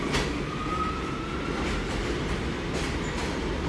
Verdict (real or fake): real